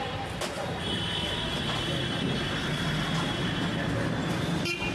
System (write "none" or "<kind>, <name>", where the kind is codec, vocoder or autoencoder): none